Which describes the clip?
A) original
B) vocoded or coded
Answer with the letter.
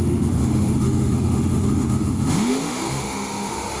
B